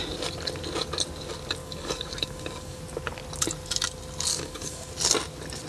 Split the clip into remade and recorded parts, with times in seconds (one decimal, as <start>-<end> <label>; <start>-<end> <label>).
0.0-1.6 recorded; 1.6-2.8 remade; 2.8-4.3 recorded; 4.3-4.9 remade; 4.9-5.7 recorded